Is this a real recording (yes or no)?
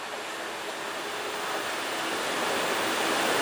yes